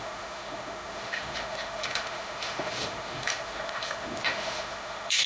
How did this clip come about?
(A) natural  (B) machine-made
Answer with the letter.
B